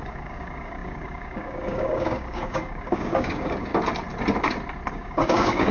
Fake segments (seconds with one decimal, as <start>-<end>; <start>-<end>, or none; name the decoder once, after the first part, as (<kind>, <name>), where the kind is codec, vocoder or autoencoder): 0.0-3.7 (codec, DAC); 4.9-5.7